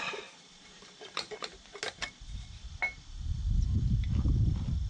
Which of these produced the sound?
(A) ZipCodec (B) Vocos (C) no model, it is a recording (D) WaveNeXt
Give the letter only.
C